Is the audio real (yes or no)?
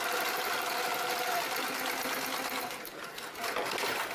yes